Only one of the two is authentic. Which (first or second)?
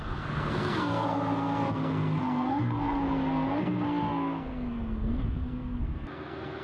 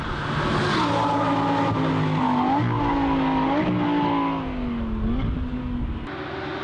second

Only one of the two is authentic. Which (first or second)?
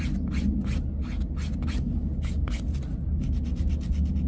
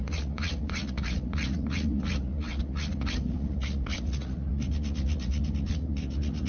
first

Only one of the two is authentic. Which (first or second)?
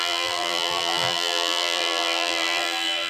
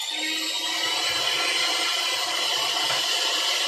second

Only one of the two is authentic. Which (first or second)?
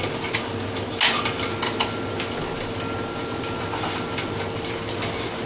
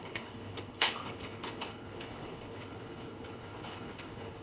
first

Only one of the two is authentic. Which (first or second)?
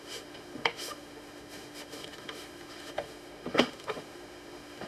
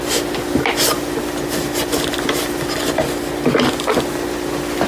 second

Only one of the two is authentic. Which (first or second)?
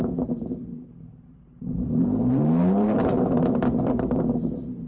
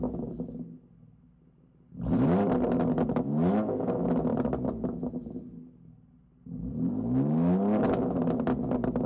second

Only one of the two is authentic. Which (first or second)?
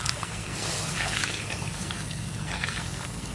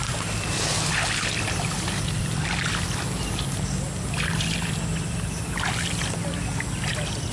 second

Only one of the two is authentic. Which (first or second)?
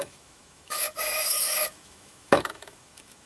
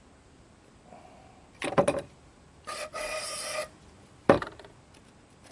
second